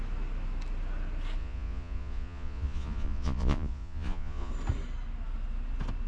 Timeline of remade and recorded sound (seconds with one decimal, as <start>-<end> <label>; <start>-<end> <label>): 0.0-1.4 recorded; 1.4-4.5 remade; 4.5-6.1 recorded